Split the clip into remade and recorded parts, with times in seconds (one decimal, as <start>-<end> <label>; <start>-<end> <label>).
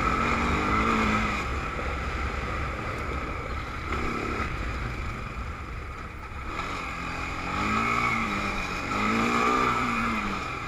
0.0-1.5 recorded; 1.5-6.5 remade; 6.5-8.1 recorded; 8.1-10.7 remade